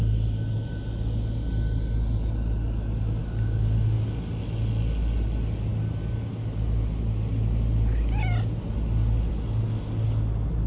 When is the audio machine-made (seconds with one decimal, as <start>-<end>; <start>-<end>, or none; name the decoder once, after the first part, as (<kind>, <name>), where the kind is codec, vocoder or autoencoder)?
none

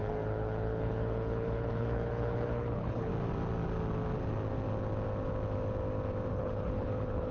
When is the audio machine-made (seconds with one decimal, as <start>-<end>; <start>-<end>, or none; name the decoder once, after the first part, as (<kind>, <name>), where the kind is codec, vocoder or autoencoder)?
0.0-3.1 (codec, HILCodec); 6.3-7.3

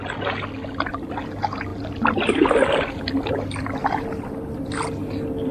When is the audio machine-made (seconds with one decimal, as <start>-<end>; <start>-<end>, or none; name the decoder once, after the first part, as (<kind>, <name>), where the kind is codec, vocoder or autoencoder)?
1.7-3.2 (vocoder, BigVGAN v2); 3.8-4.9

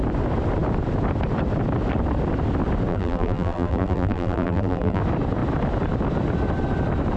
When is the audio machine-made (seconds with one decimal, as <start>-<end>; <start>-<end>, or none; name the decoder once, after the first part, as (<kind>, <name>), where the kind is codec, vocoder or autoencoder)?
2.9-5.0 (vocoder, BigVGAN v2)

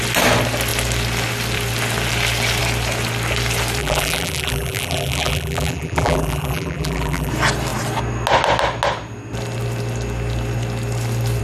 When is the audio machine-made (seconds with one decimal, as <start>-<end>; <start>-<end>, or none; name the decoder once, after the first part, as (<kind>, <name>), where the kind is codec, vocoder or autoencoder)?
3.8-7.3 (vocoder, BigVGAN v2)